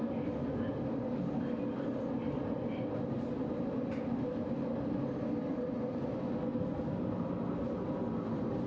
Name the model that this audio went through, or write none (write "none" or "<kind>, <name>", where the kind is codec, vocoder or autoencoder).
none